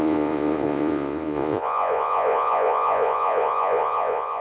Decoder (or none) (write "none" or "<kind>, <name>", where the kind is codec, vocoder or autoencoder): vocoder, Vocos